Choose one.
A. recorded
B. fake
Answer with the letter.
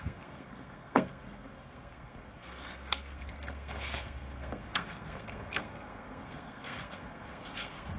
B